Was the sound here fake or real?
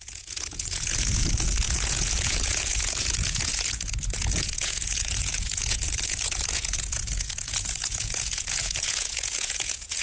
fake